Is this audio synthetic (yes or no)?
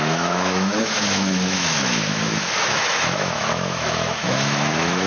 yes